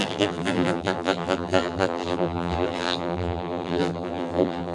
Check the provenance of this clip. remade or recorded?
remade